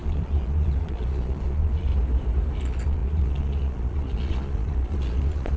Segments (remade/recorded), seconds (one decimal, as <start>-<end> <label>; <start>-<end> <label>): 0.0-1.9 remade; 1.9-2.6 recorded; 2.6-5.6 remade